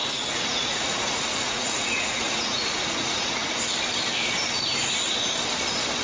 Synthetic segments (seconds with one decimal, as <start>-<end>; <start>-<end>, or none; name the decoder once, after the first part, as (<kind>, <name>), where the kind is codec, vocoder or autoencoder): 0.0-3.6 (vocoder, Vocos)